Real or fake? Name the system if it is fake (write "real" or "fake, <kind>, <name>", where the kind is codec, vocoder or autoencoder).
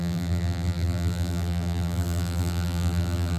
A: fake, vocoder, BigVGAN v2